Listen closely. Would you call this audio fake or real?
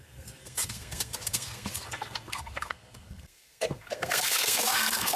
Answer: fake